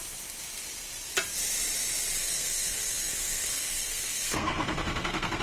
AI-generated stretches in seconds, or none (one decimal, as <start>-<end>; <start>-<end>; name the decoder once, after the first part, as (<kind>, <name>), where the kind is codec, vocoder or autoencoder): 2.2-5.4 (codec, SNAC)